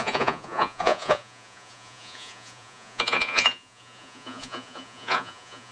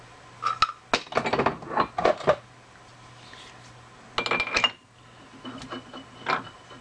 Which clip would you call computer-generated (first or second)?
first